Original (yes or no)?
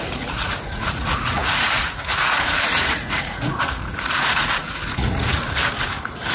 no